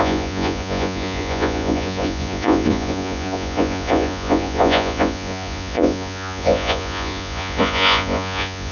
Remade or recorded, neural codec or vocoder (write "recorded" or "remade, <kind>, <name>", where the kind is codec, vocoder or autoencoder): remade, vocoder, Vocos